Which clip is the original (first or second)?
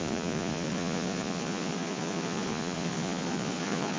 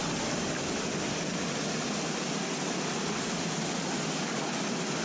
second